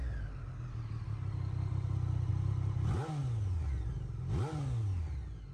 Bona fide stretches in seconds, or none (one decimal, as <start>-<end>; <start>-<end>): 0.0-5.5